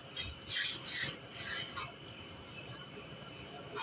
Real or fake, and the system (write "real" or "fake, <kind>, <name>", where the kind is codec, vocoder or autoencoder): real